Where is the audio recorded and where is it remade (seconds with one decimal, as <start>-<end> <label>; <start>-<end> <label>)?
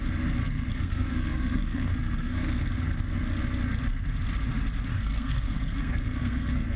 0.0-0.4 recorded; 0.4-2.7 remade; 2.7-4.9 recorded; 4.9-6.8 remade